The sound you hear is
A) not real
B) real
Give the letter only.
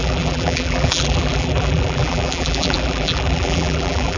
A